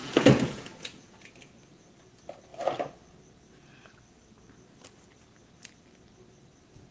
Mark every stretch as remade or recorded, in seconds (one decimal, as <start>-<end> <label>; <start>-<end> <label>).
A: 0.0-1.3 remade; 1.3-6.9 recorded